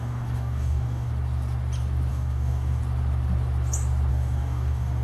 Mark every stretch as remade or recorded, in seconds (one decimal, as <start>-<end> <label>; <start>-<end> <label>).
0.0-1.1 remade; 1.1-2.1 recorded; 2.1-2.8 remade; 2.8-4.1 recorded; 4.1-5.0 remade